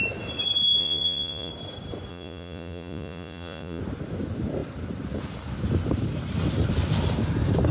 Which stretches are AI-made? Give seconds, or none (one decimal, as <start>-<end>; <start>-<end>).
0.8-1.5; 2.1-3.8